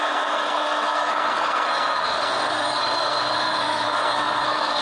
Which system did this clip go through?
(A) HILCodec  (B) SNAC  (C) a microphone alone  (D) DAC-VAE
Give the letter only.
B